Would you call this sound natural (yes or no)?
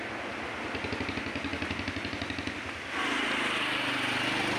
yes